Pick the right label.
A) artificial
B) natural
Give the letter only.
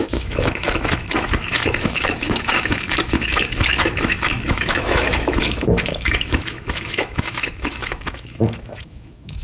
A